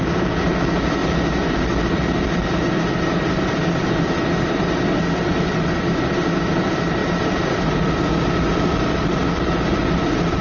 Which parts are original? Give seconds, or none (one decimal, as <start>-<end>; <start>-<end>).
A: 0.0-7.0; 7.8-10.4